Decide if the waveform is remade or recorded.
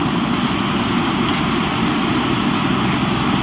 recorded